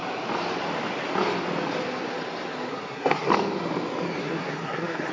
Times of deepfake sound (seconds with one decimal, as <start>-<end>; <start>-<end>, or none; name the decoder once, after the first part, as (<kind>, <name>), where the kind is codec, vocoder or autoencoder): 2.7-3.3 (codec, SNAC); 4.2-5.1